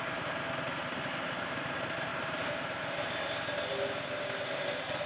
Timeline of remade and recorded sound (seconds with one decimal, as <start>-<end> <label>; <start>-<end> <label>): 0.0-2.1 recorded; 2.1-3.1 remade; 3.1-5.1 recorded